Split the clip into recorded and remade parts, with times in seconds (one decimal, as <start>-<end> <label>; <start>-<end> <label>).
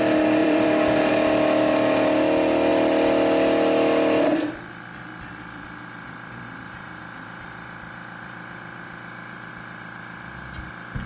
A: 0.0-0.4 recorded; 0.4-1.1 remade; 1.1-5.3 recorded; 5.3-9.5 remade; 9.5-11.1 recorded